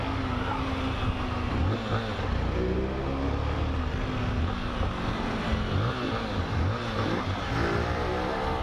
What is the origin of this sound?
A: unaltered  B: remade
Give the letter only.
A